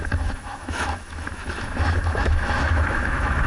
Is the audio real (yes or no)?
no